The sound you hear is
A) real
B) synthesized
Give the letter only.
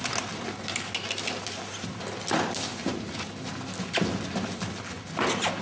A